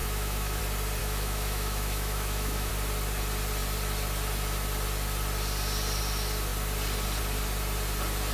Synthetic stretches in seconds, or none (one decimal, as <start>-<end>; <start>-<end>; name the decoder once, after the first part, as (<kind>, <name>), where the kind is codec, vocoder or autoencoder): 0.0-0.6 (autoencoder, DAC-VAE); 1.0-2.7